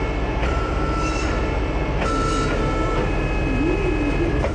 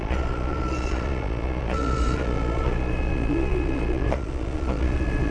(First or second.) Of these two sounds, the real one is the first